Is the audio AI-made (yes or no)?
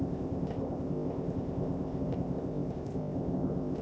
yes